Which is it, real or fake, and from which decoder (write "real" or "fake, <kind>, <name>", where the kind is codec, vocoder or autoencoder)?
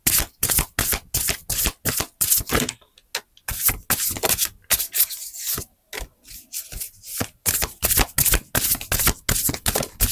real